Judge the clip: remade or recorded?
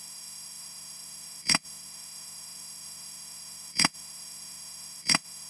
remade